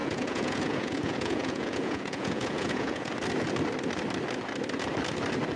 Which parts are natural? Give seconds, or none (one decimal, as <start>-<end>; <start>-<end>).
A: 3.1-5.6